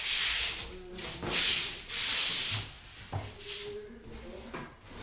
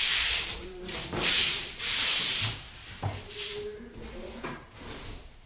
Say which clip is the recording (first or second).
first